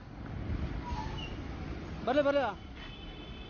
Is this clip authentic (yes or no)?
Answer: yes